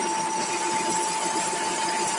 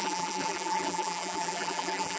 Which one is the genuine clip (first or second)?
first